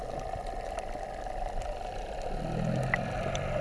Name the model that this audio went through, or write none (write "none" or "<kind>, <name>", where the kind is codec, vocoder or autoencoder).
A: none